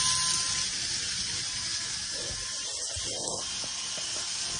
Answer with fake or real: real